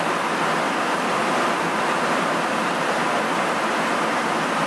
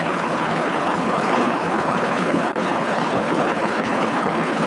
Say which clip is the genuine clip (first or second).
first